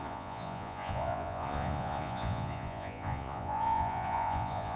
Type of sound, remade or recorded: remade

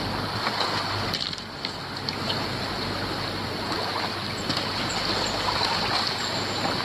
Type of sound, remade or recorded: recorded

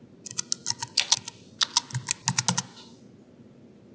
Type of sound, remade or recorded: recorded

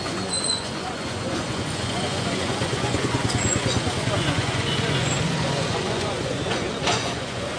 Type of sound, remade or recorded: remade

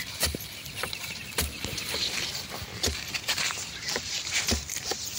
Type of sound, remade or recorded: remade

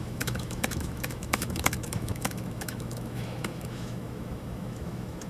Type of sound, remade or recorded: remade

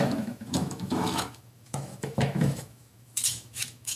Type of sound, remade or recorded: remade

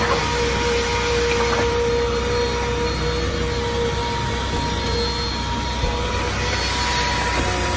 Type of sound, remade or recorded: recorded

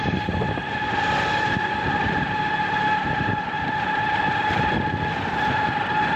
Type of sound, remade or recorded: recorded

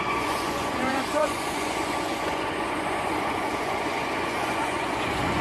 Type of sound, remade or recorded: remade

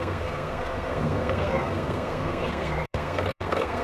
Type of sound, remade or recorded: remade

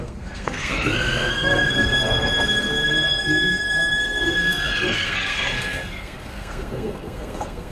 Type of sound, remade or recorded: remade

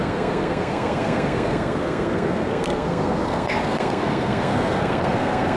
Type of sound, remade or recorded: remade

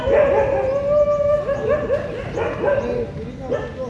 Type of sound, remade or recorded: recorded